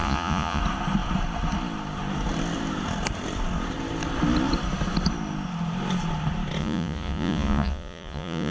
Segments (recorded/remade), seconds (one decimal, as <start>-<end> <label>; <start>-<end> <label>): 0.0-0.6 remade; 0.6-6.6 recorded; 6.6-8.5 remade